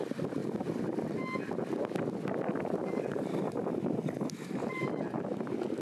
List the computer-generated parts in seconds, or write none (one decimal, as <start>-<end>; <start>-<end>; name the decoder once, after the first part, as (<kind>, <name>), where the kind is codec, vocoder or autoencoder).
none